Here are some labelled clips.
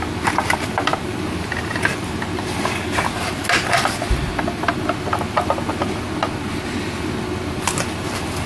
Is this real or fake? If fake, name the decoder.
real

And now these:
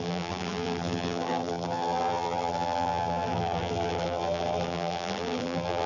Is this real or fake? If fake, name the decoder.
fake, vocoder, BigVGAN v2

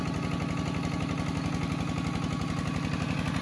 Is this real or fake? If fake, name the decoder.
real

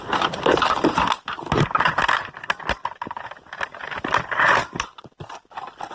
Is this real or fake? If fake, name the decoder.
real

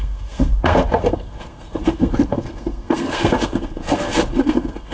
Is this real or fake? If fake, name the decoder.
fake, codec, SNAC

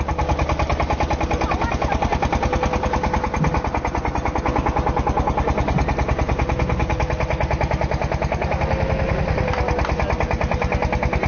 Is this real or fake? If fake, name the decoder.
real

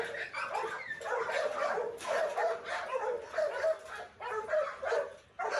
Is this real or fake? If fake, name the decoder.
fake, vocoder, BigVGAN v2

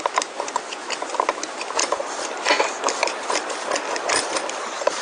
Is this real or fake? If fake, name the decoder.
real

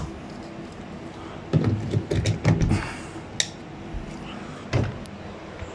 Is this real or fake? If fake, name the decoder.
real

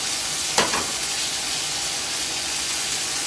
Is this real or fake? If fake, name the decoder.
fake, vocoder, Vocos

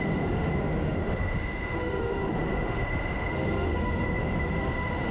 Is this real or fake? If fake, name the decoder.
fake, autoencoder, DAC-VAE